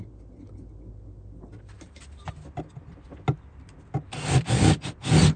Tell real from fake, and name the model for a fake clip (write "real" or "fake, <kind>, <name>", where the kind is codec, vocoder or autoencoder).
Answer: real